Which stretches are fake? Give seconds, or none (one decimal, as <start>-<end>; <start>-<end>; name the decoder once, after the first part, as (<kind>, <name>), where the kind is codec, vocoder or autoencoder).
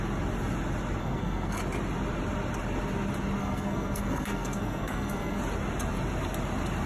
1.0-1.6 (codec, SNAC); 3.4-5.4